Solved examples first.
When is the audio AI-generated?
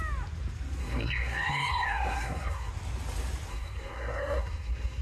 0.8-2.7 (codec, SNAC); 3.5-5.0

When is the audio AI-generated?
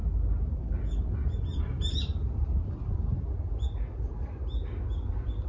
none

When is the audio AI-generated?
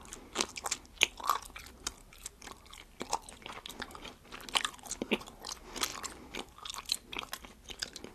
none